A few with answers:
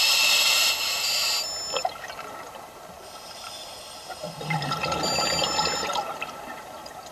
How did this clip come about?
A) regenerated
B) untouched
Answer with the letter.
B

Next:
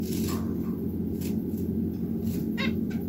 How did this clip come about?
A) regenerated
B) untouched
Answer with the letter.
B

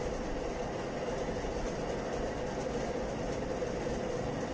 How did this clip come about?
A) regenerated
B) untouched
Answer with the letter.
B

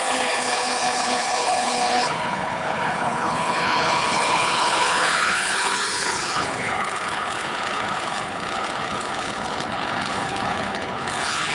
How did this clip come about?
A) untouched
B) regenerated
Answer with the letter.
B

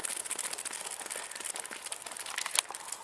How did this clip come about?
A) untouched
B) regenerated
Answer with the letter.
A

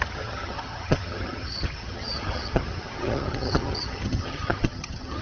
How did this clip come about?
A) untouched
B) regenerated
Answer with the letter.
B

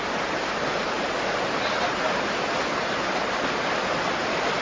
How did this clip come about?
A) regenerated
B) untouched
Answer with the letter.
B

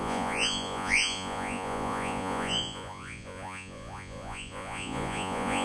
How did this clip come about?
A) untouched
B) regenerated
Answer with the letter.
B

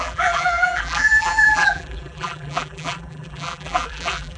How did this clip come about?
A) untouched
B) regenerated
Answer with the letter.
B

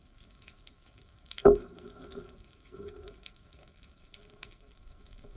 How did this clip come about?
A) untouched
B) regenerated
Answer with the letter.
B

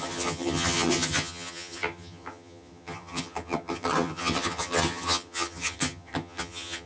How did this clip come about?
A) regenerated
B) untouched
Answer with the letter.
A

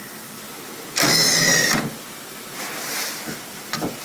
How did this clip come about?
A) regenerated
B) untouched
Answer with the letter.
B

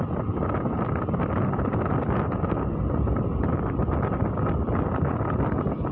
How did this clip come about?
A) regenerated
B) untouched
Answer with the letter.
B